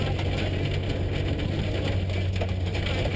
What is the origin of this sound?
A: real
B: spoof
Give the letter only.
A